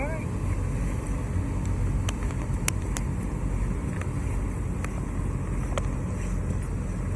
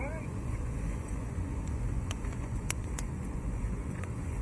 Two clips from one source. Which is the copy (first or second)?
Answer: second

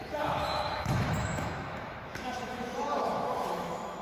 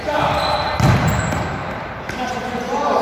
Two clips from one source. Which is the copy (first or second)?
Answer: first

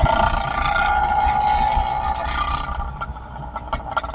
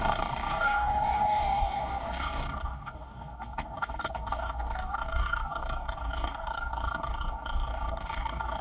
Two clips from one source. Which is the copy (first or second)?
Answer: second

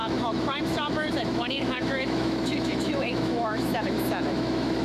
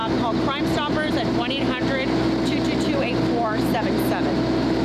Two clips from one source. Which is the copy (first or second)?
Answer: first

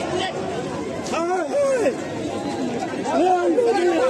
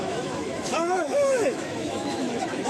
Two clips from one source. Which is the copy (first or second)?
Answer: second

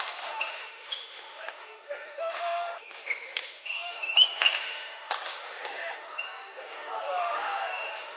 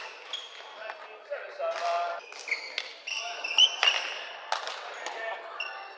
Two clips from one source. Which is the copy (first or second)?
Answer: first